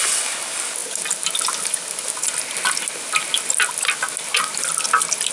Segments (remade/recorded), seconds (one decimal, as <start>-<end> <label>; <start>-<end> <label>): 0.0-5.3 recorded